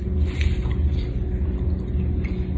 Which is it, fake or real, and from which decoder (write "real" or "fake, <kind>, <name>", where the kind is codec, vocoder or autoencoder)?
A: real